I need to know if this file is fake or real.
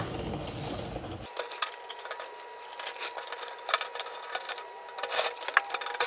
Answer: real